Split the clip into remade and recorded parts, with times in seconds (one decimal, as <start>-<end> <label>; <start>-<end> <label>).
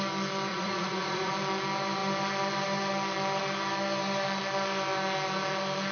0.0-0.5 recorded; 0.5-1.3 remade; 1.3-5.9 recorded